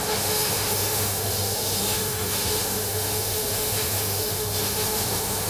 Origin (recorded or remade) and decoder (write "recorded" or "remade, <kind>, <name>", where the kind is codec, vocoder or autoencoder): remade, autoencoder, DAC-VAE